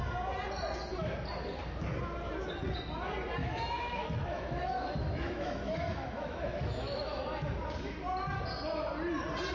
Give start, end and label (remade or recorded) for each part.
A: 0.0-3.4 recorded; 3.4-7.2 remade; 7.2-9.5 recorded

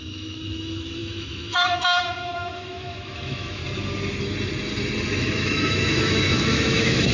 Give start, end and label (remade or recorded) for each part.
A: 0.0-3.6 remade; 3.6-5.2 recorded; 5.2-7.1 remade

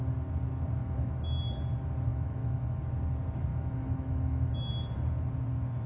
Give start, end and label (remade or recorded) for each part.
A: 0.0-0.8 recorded; 0.8-1.4 remade; 1.4-2.1 recorded; 2.1-2.8 remade; 2.8-3.5 recorded; 3.5-4.7 remade; 4.7-5.9 recorded

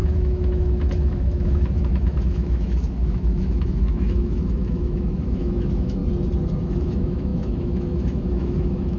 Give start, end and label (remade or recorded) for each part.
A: 0.0-6.0 remade; 6.0-6.6 recorded; 6.6-9.0 remade

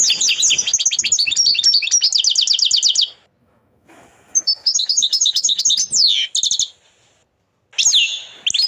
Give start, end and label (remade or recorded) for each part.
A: 0.0-3.4 recorded; 3.4-5.6 remade; 5.6-8.7 recorded